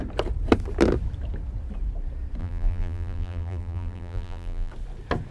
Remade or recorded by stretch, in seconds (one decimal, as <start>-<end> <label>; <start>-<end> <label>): 0.0-2.4 recorded; 2.4-4.7 remade; 4.7-5.3 recorded